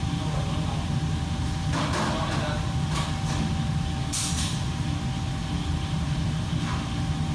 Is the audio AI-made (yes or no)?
no